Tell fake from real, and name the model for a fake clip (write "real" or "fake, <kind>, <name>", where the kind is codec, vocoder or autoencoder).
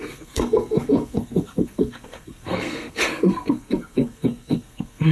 fake, codec, SNAC